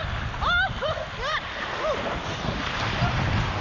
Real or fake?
real